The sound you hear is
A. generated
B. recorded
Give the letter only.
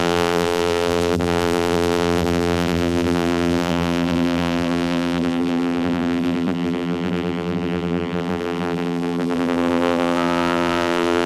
A